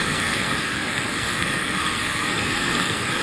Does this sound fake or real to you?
fake